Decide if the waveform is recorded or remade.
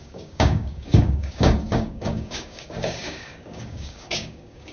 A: remade